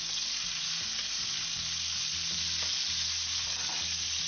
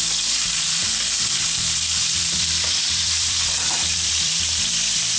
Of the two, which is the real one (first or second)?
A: first